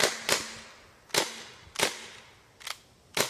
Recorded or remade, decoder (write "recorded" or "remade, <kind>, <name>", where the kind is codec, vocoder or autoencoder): recorded